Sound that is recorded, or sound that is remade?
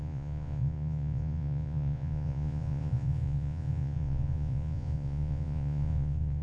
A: remade